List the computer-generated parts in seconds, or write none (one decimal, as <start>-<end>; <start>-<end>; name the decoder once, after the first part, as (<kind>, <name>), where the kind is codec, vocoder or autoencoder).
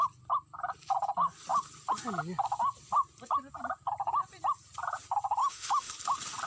5.4-5.9 (autoencoder, DAC-VAE)